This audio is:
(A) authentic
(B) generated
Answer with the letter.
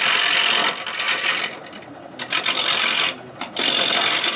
A